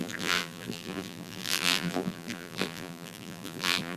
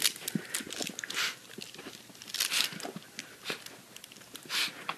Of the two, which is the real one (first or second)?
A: second